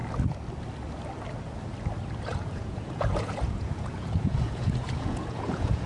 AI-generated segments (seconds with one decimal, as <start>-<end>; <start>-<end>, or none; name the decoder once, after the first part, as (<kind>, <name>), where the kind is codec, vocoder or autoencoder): 2.3-5.9 (vocoder, Vocos)